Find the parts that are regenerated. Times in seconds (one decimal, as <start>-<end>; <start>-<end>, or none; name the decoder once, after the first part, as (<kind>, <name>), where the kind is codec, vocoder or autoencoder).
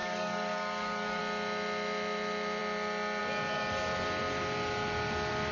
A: 0.0-1.2 (codec, DAC)